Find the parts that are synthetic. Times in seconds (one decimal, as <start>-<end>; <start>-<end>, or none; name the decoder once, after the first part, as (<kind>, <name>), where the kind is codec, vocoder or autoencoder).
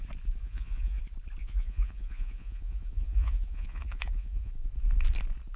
0.4-1.0 (vocoder, Vocos); 1.4-4.5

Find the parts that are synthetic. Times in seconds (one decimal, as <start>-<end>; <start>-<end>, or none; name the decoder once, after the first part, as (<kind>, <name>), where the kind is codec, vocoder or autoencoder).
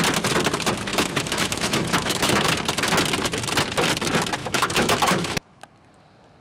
0.9-2.5 (autoencoder, DAC-VAE); 4.4-5.6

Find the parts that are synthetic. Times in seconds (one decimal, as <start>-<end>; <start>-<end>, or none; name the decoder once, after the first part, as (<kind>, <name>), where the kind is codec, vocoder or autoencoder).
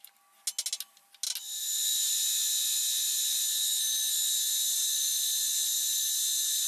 1.6-2.2 (vocoder, BigVGAN v2)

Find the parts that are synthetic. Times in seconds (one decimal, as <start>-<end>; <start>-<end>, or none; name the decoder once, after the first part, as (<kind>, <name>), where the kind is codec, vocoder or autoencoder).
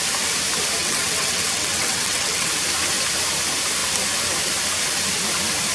0.8-2.5 (vocoder, WaveNeXt)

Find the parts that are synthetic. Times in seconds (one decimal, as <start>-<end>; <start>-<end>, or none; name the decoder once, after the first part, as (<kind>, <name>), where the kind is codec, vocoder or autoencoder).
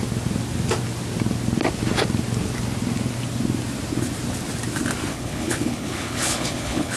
5.1-7.0 (codec, HILCodec)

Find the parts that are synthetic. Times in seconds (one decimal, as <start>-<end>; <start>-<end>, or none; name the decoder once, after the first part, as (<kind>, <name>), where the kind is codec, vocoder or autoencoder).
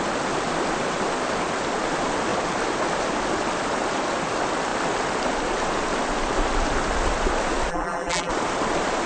7.7-8.3 (vocoder, BigVGAN v2)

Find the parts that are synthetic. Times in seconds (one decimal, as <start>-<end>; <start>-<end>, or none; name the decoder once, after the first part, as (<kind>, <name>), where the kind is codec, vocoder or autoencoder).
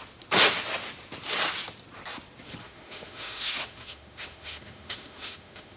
2.6-5.8 (autoencoder, DAC-VAE)